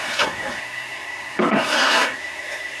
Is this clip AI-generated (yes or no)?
yes